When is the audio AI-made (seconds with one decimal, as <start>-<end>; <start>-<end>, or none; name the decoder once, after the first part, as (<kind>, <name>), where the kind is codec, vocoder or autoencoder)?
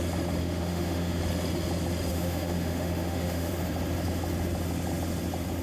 0.4-1.2 (autoencoder, DAC-VAE); 2.1-3.5